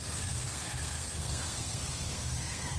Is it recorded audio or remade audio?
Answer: remade